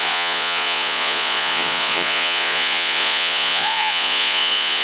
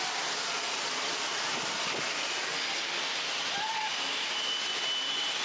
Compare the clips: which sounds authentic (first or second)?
second